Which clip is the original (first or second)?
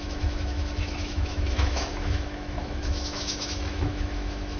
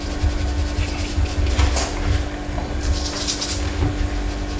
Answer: second